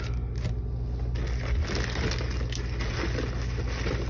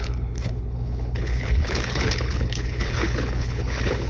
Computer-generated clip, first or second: second